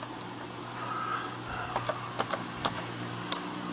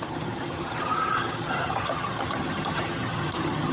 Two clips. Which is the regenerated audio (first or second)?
second